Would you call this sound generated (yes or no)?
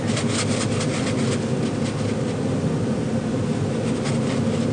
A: no